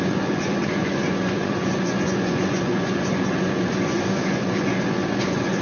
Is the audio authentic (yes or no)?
no